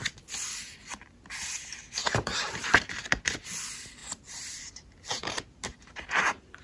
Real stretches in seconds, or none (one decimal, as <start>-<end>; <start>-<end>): 0.0-2.0; 3.1-4.0; 5.4-6.6